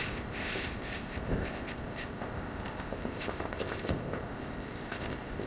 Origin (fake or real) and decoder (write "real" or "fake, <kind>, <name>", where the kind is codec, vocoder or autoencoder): fake, codec, ZipCodec